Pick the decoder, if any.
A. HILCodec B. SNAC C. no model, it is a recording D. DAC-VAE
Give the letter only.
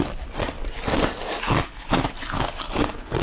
C